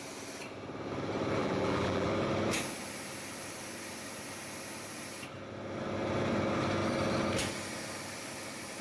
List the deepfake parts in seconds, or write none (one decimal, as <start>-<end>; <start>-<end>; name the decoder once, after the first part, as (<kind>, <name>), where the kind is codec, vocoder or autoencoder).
1.4-2.1 (vocoder, BigVGAN v2)